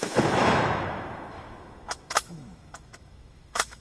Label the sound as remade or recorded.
remade